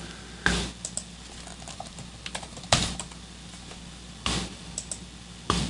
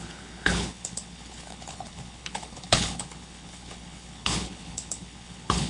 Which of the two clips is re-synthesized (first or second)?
second